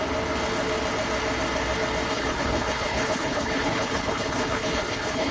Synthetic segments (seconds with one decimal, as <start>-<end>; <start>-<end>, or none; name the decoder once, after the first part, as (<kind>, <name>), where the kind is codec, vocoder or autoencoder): 2.1-5.3 (codec, HILCodec)